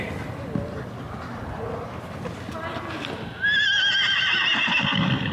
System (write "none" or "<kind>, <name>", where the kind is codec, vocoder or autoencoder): none